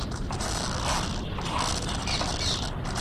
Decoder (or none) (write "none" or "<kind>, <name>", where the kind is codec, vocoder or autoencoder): none